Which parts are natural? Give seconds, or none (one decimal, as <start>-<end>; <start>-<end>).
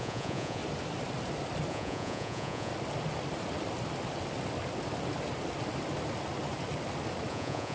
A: 0.6-1.7; 2.7-7.3